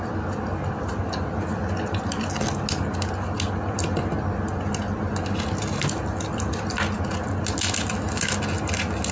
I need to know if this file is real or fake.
real